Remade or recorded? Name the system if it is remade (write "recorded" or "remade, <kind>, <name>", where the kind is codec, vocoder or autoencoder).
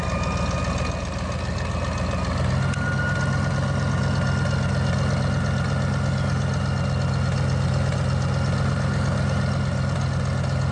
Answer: recorded